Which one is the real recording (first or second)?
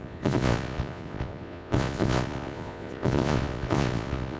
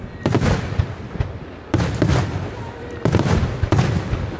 second